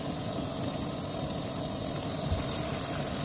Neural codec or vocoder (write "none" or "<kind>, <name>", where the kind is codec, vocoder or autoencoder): none